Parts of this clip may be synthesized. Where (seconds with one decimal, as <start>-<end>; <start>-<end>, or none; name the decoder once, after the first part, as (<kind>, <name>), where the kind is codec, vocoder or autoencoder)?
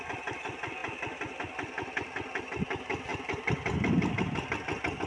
3.1-4.1 (vocoder, BigVGAN v2)